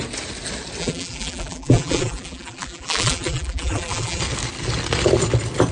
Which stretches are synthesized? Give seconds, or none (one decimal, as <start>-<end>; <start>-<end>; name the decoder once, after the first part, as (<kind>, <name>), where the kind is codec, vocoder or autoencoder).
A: 0.8-4.2 (vocoder, BigVGAN v2)